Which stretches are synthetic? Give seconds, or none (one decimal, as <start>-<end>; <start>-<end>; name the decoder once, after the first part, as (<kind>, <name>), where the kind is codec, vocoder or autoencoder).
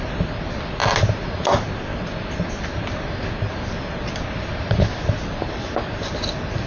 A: none